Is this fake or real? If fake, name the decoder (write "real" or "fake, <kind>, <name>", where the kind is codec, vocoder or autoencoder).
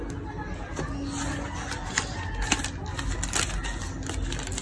real